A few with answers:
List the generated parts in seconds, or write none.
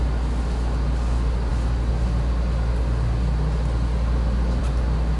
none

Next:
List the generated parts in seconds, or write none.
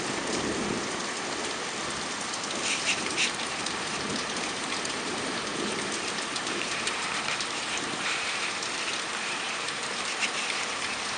0.0-1.0 (vocoder, BigVGAN v2); 2.9-11.2